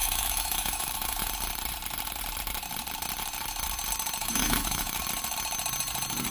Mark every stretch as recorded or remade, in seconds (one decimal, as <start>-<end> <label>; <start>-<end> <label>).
0.0-1.3 remade; 1.3-4.2 recorded; 4.2-5.0 remade; 5.0-6.3 recorded

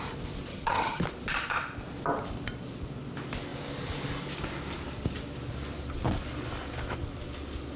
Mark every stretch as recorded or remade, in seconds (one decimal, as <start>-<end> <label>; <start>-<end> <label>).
0.0-0.5 recorded; 0.5-1.0 remade; 1.0-7.8 recorded

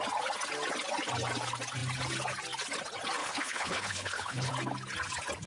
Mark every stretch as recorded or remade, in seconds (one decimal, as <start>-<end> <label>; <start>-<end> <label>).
0.0-3.2 recorded; 3.2-4.5 remade; 4.5-5.5 recorded

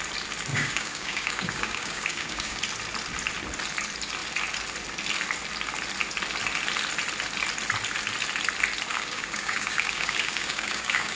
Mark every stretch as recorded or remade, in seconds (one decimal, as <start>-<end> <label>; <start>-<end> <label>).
0.0-0.5 recorded; 0.5-2.6 remade; 2.6-8.9 recorded; 8.9-11.2 remade